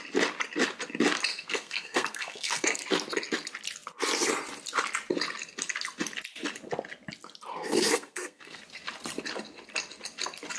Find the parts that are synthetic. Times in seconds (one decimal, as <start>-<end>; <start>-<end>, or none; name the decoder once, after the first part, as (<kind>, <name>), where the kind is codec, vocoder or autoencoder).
1.3-2.8 (codec, SNAC); 7.5-8.6